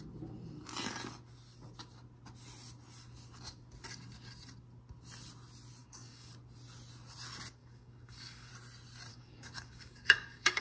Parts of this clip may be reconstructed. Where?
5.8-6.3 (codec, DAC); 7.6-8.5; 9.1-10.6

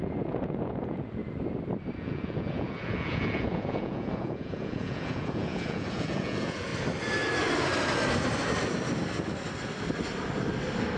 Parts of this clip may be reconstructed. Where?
0.0-1.2 (vocoder, Vocos); 2.0-6.7

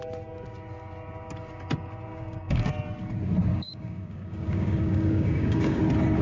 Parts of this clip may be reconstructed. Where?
2.1-2.7 (codec, DAC); 3.5-5.8

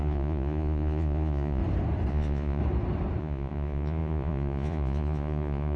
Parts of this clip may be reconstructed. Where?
0.0-1.6 (vocoder, Vocos); 2.1-2.6; 3.2-5.8